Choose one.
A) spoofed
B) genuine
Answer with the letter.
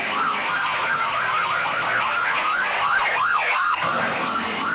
A